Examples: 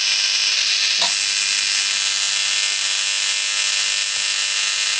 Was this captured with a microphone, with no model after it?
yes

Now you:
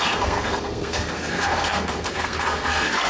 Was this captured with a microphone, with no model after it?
no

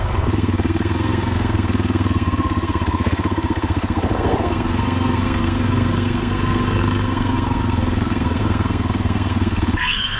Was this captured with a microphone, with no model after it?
no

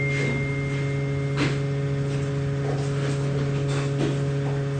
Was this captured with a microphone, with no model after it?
yes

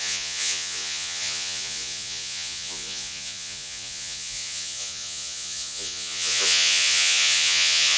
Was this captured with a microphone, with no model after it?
no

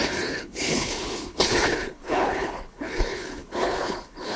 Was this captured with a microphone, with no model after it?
no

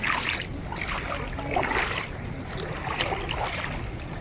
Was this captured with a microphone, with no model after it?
yes